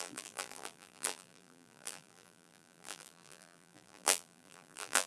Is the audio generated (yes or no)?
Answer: yes